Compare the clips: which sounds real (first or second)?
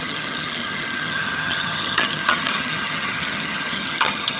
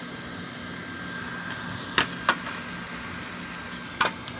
second